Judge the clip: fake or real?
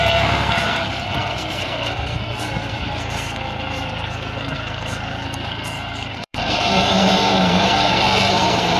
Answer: fake